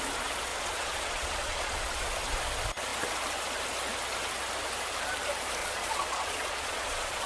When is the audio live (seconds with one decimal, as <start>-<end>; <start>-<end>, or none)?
0.0-0.5; 1.8-5.6